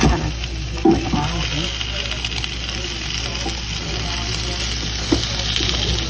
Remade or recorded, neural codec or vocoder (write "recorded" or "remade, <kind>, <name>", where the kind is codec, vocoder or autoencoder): recorded